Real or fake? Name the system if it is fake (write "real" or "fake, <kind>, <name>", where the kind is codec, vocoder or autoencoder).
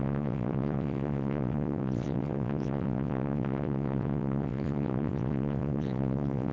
fake, vocoder, WaveNeXt